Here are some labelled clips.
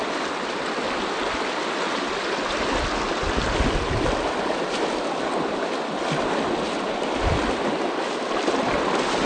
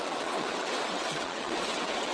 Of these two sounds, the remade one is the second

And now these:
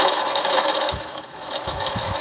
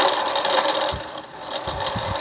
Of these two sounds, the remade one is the first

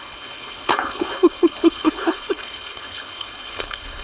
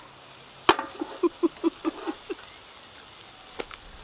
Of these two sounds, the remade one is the first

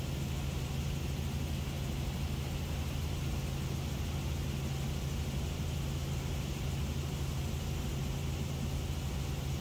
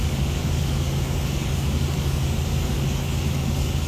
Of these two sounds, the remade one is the second